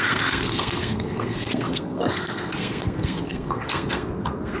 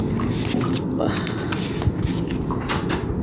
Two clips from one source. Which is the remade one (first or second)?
first